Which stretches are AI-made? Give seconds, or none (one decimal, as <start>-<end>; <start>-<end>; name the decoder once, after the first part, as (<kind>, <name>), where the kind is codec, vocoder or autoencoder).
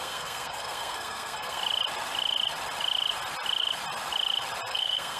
0.0-1.6 (codec, SNAC); 4.7-5.2